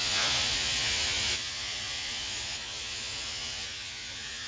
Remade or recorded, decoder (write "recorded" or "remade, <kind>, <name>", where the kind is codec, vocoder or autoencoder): remade, vocoder, Vocos